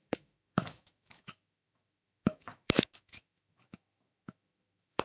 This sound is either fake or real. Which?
fake